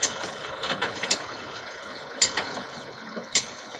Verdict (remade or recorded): remade